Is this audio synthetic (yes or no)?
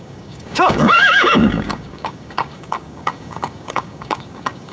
yes